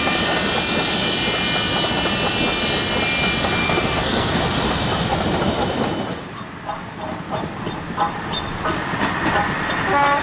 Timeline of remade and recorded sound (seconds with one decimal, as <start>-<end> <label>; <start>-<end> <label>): 0.0-3.6 recorded; 3.6-4.4 remade; 4.4-10.2 recorded